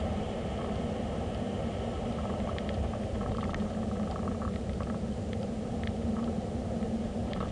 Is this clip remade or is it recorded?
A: remade